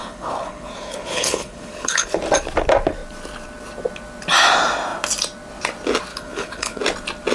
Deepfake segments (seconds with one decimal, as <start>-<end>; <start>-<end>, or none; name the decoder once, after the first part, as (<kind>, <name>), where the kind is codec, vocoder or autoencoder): 0.0-2.2 (codec, HILCodec); 6.1-6.8